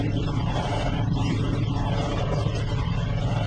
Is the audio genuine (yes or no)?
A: yes